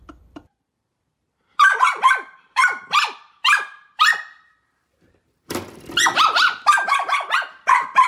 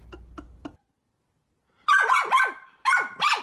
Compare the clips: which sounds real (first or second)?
second